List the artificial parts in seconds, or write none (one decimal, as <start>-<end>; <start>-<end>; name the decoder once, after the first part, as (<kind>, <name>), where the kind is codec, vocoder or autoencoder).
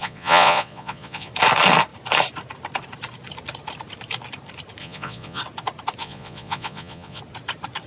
0.0-1.3 (vocoder, Vocos); 4.8-5.4; 6.0-7.2